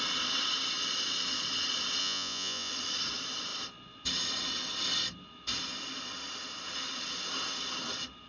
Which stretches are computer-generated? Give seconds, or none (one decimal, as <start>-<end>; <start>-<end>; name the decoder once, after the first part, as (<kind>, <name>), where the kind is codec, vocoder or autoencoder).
2.0-2.7 (vocoder, Vocos)

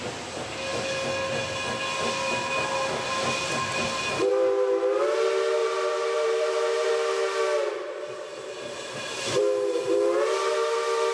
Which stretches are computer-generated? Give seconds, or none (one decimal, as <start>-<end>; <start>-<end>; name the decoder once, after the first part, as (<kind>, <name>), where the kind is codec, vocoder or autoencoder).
5.6-6.9 (vocoder, BigVGAN v2); 8.3-9.4

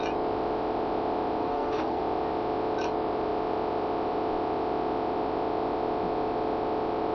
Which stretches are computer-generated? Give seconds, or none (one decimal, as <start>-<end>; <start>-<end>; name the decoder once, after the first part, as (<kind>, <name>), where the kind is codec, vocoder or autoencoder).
1.4-2.0 (codec, SNAC)

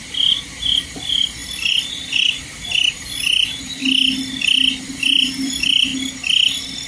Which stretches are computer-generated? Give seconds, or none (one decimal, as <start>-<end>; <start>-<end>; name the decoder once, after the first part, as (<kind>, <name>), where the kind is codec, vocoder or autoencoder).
0.0-3.8 (vocoder, BigVGAN v2); 4.8-5.9

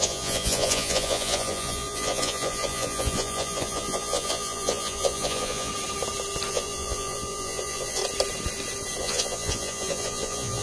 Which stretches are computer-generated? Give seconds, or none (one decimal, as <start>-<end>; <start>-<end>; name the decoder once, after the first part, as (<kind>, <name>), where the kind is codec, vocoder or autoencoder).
0.0-5.7 (vocoder, Vocos); 6.5-8.0; 9.0-10.6

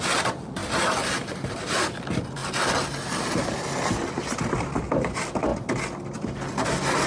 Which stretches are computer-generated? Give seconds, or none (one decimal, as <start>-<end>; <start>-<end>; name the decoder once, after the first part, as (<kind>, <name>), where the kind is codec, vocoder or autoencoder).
none

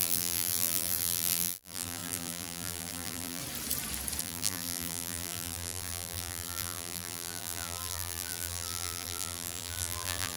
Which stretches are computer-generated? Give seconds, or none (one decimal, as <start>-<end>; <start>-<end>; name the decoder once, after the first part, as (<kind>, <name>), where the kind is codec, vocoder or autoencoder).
0.0-3.4 (vocoder, BigVGAN v2); 4.2-10.4

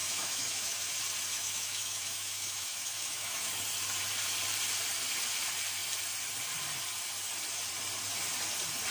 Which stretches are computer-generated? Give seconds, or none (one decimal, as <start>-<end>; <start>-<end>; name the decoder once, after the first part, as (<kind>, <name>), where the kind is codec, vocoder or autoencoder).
0.0-0.9 (autoencoder, DAC-VAE); 1.3-3.5